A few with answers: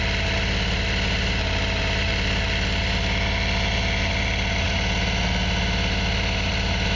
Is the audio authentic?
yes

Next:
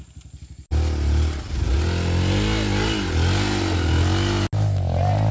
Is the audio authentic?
yes